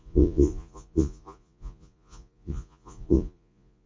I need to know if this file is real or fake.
fake